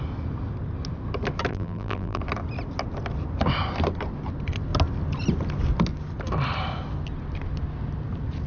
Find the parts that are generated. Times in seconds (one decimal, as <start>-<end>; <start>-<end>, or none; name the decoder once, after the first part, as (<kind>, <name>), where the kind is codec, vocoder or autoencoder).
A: 1.5-2.2 (vocoder, BigVGAN v2)